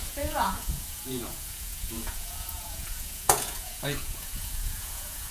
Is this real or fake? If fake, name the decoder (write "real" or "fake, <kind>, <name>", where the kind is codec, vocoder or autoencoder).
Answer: fake, vocoder, Vocos